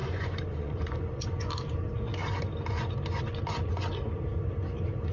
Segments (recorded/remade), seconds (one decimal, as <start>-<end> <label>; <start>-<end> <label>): 0.0-1.5 remade; 1.5-5.1 recorded